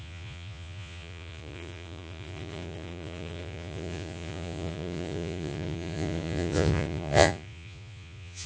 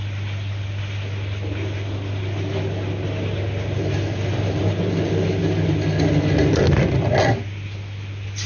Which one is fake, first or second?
first